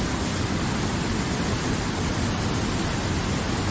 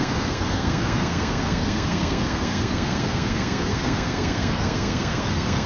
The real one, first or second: first